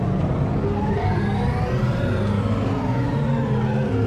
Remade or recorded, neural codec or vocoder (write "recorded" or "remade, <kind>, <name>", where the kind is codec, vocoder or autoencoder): recorded